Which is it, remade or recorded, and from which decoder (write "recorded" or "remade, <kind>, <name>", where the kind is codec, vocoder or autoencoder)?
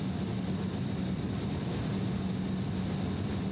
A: recorded